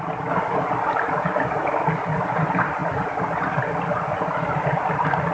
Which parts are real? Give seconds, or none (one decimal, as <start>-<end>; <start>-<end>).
0.0-5.3